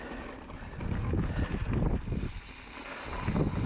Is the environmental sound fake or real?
real